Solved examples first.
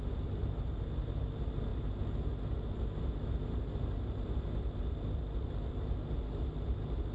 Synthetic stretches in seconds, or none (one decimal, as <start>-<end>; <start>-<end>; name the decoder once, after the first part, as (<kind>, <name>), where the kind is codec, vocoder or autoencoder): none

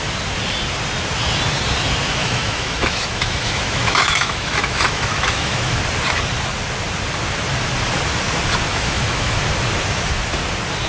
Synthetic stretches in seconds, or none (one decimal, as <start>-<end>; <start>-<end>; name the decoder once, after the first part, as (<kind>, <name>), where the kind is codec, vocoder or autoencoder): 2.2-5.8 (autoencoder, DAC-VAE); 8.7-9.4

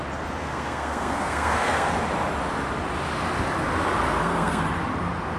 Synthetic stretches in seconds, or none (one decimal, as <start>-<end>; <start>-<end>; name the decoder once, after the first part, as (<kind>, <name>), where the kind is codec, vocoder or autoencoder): 0.4-1.9 (codec, SNAC); 4.1-4.6

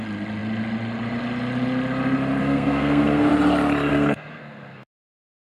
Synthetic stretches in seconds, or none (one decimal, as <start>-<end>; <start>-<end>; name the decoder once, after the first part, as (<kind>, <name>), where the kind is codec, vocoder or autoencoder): 2.4-3.3 (codec, SNAC); 3.9-5.6

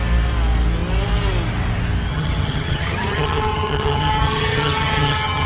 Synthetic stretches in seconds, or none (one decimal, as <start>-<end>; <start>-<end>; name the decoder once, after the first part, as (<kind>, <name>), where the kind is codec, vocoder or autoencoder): 2.1-5.5 (vocoder, HiFi-GAN)

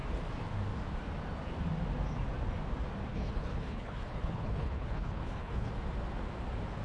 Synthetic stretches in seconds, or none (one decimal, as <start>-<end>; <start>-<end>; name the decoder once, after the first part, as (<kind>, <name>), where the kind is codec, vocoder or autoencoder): 3.1-5.7 (codec, HILCodec)

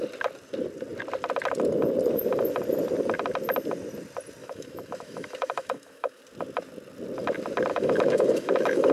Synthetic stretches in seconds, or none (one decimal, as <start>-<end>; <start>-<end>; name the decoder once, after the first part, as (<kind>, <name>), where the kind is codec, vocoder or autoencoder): 4.4-6.2 (autoencoder, DAC-VAE); 7.7-8.9

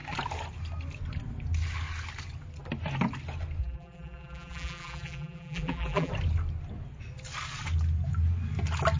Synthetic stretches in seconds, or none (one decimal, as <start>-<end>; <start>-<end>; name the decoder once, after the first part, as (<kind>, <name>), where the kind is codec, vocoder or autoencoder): 3.6-6.1 (vocoder, BigVGAN v2)